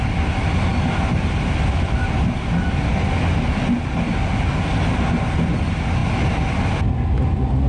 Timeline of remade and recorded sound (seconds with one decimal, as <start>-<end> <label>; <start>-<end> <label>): 0.0-7.7 recorded